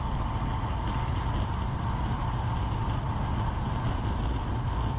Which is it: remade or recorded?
recorded